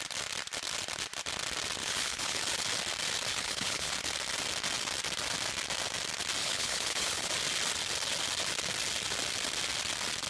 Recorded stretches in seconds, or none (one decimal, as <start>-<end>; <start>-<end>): 0.0-1.8; 2.4-3.3; 3.9-6.4; 7.3-10.3